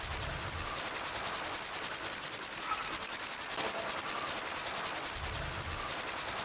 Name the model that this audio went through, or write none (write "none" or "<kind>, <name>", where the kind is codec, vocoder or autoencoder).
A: none